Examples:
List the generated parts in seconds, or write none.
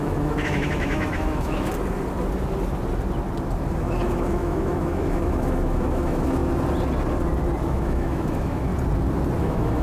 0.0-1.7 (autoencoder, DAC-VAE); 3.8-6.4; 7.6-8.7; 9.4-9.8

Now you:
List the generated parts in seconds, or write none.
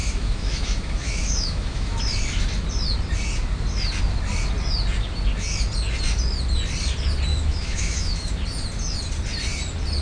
0.0-2.0 (autoencoder, DAC-VAE); 7.3-8.3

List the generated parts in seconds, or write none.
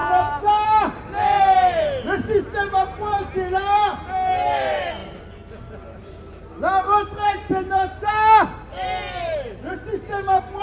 none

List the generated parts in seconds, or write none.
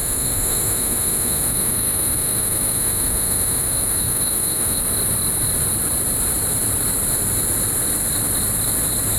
0.0-4.8 (autoencoder, DAC-VAE)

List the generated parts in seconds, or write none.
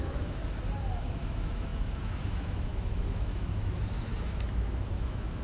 0.0-0.4 (autoencoder, DAC-VAE); 1.0-5.4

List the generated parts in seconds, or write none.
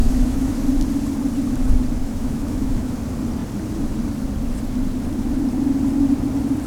0.0-0.6 (autoencoder, DAC-VAE); 2.0-3.0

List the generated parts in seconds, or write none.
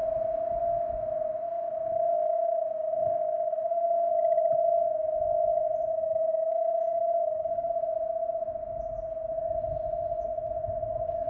1.5-4.1 (autoencoder, DAC-VAE); 5.9-7.7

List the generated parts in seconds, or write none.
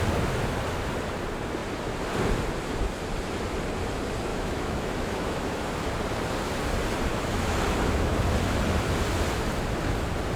4.3-5.9 (autoencoder, DAC-VAE); 7.1-8.1